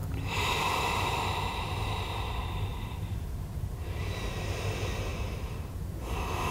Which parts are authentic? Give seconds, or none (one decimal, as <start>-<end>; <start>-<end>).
0.0-2.7; 4.0-5.1; 5.7-6.5